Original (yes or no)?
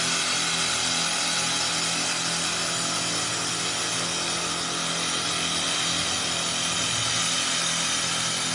yes